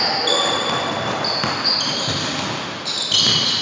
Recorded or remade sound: recorded